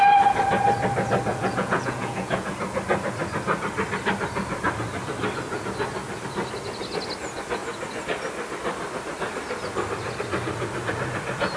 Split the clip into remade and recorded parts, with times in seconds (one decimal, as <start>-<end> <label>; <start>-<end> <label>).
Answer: 0.0-1.3 recorded; 1.3-2.5 remade; 2.5-11.6 recorded